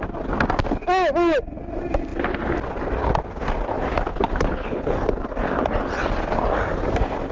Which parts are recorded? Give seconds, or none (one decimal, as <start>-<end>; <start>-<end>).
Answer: 0.0-4.1; 4.9-7.3